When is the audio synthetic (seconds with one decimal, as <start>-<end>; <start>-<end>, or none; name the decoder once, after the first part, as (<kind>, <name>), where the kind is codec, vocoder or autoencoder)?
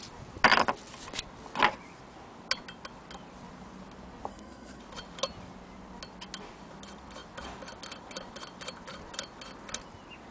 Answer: 4.3-4.8 (codec, SNAC)